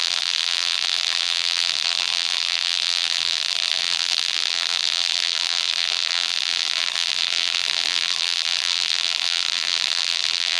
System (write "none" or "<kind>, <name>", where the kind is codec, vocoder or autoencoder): vocoder, BigVGAN v2